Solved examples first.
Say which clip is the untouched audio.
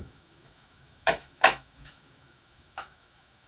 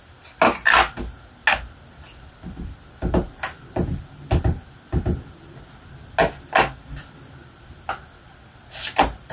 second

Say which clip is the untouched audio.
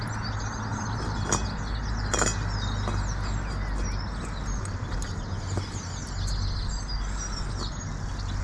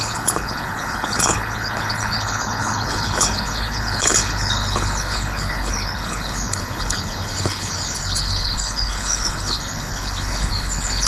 first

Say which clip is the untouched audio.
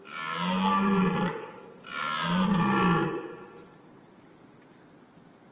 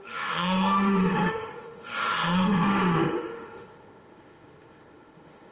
first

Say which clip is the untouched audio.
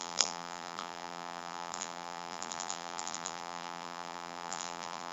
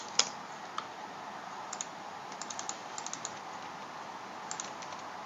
second